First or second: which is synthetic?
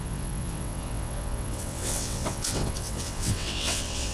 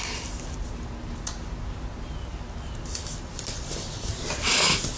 first